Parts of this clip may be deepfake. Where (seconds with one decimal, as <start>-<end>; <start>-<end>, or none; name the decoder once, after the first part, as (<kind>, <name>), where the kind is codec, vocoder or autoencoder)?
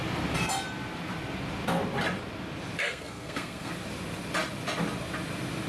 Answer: 2.8-3.7 (codec, SNAC)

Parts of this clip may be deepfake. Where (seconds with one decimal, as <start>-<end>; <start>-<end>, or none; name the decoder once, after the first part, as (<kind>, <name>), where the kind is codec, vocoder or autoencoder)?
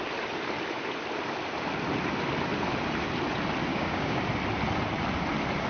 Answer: 3.7-4.2 (codec, DAC)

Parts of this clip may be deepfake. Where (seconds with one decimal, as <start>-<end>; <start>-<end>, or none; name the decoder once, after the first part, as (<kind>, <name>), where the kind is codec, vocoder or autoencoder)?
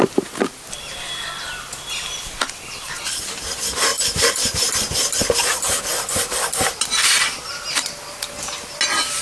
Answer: 3.9-4.7 (vocoder, BigVGAN v2)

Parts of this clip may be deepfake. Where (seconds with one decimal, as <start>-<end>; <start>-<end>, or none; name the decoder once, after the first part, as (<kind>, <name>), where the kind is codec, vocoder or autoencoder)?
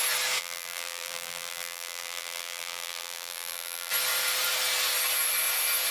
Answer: 0.4-3.9 (vocoder, BigVGAN v2)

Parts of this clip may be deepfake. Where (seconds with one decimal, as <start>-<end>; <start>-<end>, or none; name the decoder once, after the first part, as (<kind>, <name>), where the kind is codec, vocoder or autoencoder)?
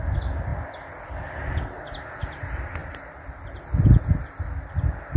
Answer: none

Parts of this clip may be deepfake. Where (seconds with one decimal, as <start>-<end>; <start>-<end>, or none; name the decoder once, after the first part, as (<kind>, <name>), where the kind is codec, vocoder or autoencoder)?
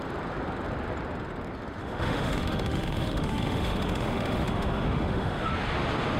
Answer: 1.8-5.5 (autoencoder, DAC-VAE)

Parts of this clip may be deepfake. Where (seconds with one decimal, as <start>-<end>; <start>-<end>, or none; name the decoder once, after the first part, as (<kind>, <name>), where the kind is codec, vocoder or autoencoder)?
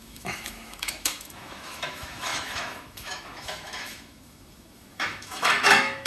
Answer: 0.0-6.1 (autoencoder, DAC-VAE)